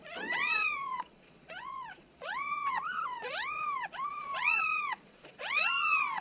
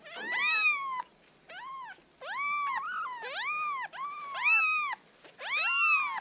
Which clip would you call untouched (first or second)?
second